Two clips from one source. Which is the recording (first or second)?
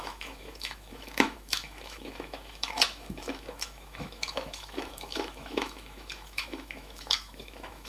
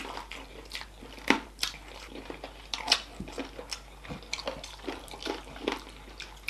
second